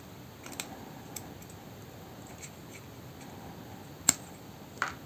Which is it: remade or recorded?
recorded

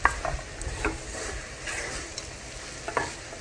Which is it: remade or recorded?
recorded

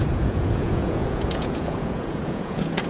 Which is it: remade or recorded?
remade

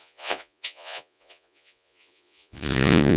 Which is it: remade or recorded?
remade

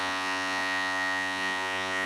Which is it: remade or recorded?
remade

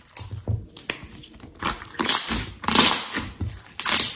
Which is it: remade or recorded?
recorded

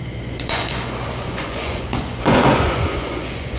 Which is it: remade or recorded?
remade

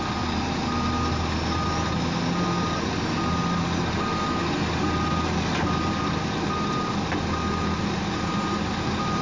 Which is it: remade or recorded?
recorded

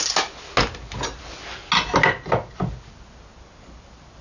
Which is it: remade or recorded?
recorded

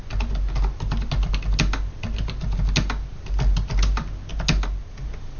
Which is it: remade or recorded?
recorded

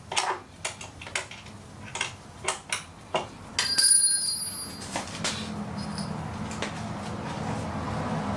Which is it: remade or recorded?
recorded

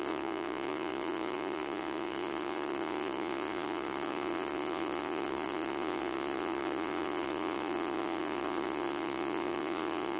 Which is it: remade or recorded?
remade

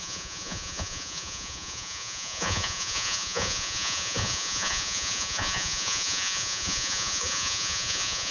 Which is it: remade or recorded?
remade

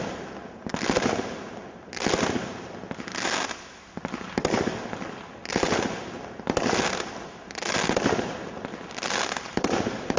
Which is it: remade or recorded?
recorded